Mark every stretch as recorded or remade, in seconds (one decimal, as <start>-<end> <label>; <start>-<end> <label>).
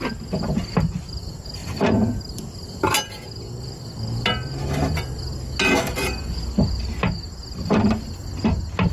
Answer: 0.0-1.6 recorded; 1.6-2.2 remade; 2.2-8.9 recorded